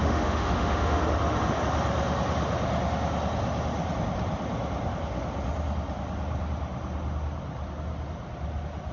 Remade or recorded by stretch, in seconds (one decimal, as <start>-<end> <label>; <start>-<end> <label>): 0.0-1.0 remade; 1.0-8.9 recorded